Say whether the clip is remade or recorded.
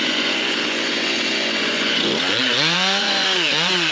remade